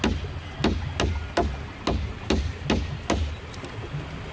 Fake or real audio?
real